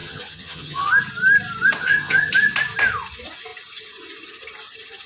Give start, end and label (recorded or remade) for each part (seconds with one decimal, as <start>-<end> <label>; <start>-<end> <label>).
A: 0.0-0.9 remade; 0.9-1.8 recorded; 1.8-2.3 remade; 2.3-5.1 recorded